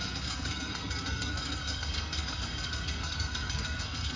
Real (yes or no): no